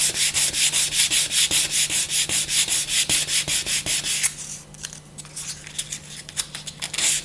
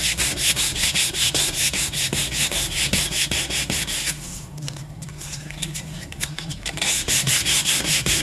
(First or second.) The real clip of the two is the first